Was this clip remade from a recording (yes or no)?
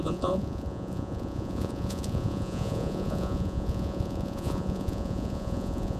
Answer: yes